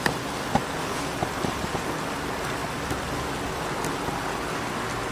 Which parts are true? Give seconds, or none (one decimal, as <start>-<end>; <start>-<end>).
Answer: 0.0-5.1